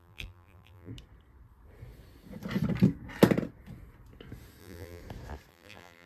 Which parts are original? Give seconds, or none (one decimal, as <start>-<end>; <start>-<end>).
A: 0.9-4.6; 5.0-5.5

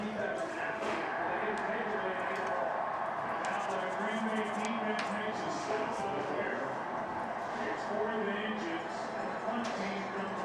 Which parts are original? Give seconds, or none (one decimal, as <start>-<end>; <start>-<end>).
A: 0.0-0.5; 1.2-5.6; 6.3-10.4

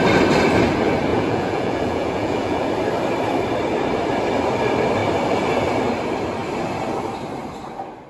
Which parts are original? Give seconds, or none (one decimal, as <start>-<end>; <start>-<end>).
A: 0.0-1.1; 2.7-8.1

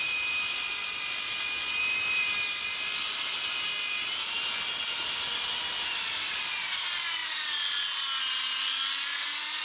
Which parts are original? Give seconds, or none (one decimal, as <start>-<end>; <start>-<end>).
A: 0.0-9.6

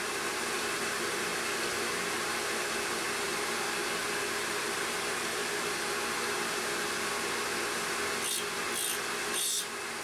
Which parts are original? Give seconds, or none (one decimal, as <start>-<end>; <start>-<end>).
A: 1.3-2.2; 3.3-4.4; 5.4-9.6

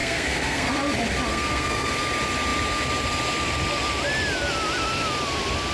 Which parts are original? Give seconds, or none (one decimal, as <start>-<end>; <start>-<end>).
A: 0.7-1.3; 1.9-5.7

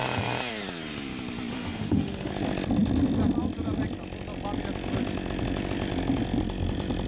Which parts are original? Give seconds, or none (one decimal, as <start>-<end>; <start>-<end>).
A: 0.0-1.5; 2.3-7.1

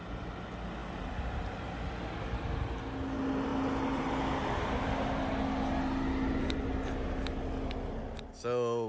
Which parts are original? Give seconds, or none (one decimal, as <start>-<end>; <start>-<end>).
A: 0.0-8.9